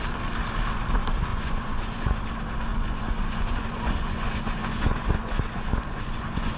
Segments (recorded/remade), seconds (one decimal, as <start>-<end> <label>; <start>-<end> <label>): 0.0-1.3 recorded; 1.3-2.2 remade; 2.2-2.7 recorded; 2.7-6.6 remade